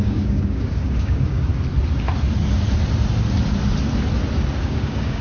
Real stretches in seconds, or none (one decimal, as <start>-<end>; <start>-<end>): 1.5-4.6